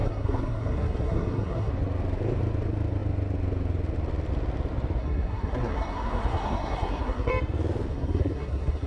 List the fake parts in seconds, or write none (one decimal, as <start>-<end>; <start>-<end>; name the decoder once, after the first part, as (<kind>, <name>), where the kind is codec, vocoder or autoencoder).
0.0-1.7 (codec, SNAC); 5.0-7.3; 7.9-8.9